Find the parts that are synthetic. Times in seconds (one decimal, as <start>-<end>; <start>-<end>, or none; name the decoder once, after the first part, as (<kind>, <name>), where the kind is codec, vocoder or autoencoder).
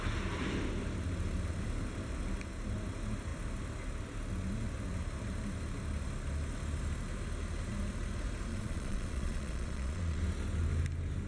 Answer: 8.5-10.2 (vocoder, Vocos)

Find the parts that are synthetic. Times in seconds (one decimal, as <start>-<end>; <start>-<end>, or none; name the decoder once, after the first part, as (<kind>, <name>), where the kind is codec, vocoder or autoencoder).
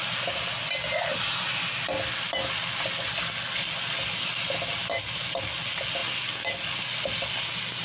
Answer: none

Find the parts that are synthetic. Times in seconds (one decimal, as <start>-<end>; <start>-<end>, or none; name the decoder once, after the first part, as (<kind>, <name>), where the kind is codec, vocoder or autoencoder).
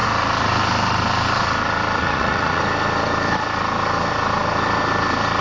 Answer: 2.0-2.6 (vocoder, Vocos)